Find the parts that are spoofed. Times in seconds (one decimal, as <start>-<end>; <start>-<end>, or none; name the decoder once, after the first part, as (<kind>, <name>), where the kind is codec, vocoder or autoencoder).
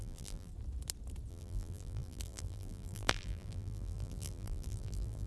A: 0.0-0.5 (vocoder, BigVGAN v2); 1.3-5.3